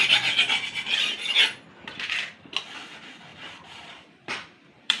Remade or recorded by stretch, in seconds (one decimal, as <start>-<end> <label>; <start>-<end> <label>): 0.0-3.3 recorded; 3.3-5.0 remade